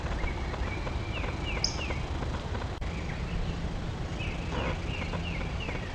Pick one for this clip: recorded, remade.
recorded